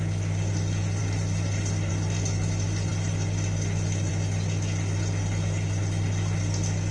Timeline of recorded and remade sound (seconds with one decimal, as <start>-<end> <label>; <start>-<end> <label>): 0.0-6.9 recorded